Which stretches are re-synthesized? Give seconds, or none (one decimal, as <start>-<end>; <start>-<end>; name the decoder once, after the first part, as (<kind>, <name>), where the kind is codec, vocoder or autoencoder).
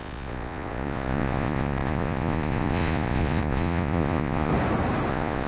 0.0-4.5 (vocoder, Vocos); 5.1-5.5